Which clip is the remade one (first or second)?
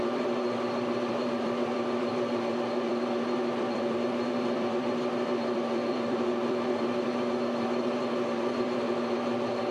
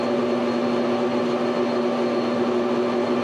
first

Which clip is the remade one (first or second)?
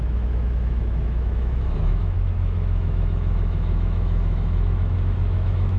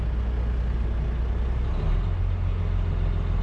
first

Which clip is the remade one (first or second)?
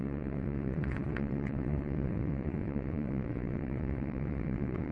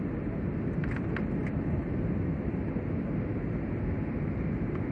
first